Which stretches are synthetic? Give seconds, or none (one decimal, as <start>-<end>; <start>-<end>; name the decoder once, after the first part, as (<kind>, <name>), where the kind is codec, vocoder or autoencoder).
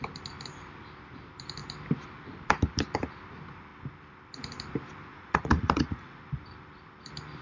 5.1-6.2 (vocoder, Vocos)